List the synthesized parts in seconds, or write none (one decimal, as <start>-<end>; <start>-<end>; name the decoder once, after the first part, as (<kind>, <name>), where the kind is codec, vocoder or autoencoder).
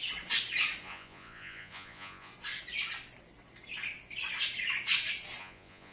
0.8-2.3 (vocoder, Vocos); 5.4-5.9